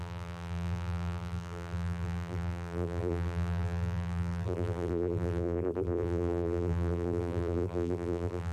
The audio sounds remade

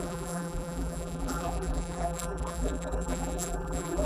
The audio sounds remade